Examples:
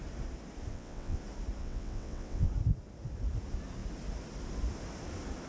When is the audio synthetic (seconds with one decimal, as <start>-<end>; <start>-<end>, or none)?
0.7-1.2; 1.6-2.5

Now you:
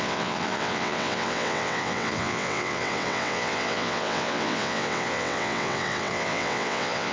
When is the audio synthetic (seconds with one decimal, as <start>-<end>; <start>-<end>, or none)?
0.0-7.1

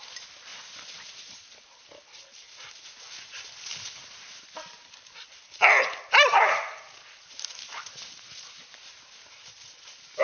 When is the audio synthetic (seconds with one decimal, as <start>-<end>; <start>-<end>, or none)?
none

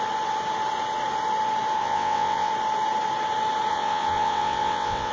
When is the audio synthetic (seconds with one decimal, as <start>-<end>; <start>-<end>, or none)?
1.8-2.5; 3.7-5.1

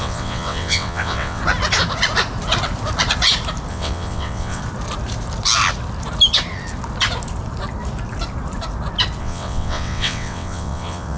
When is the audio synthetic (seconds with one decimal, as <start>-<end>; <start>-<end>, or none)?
0.0-1.4; 3.7-4.6; 9.2-11.2